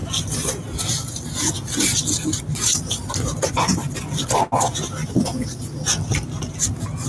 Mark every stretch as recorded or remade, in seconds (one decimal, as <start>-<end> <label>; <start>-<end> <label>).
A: 0.0-7.1 recorded